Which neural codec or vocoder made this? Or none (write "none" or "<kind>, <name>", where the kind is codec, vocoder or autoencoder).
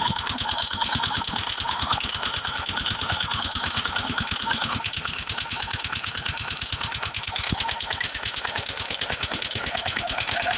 autoencoder, DAC-VAE